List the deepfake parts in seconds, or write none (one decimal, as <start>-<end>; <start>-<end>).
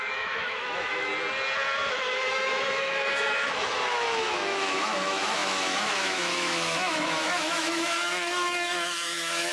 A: 0.0-1.1; 1.9-9.5